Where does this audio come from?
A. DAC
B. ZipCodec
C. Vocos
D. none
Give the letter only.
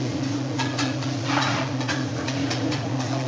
C